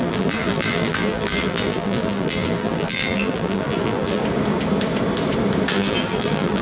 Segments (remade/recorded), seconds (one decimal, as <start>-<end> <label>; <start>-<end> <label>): 0.0-4.2 remade; 4.2-5.7 recorded; 5.7-6.6 remade